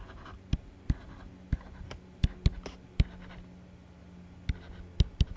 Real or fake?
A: real